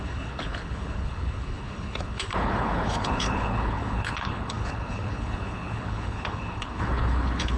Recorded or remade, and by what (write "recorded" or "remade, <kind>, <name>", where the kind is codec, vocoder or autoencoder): remade, codec, HILCodec